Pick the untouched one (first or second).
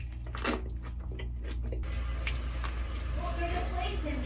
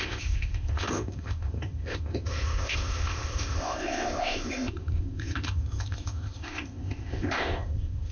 first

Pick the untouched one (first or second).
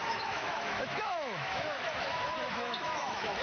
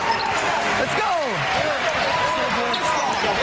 second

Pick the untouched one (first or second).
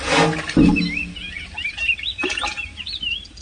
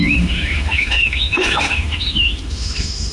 first